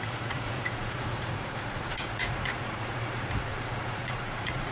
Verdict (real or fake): fake